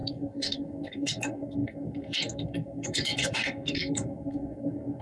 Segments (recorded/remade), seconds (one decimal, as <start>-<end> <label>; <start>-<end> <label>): 0.0-5.0 remade